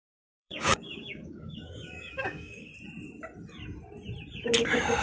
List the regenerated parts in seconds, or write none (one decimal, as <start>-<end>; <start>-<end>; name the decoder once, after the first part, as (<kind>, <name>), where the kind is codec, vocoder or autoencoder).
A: 0.0-2.7 (codec, DAC)